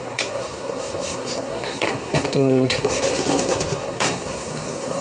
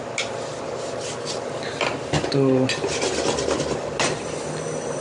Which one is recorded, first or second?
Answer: second